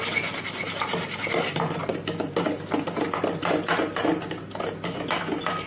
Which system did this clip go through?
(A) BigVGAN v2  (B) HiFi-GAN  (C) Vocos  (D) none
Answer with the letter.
D